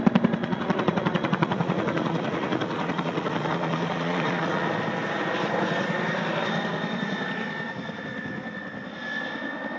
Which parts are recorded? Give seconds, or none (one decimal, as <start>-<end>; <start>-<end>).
0.0-0.4; 4.7-9.8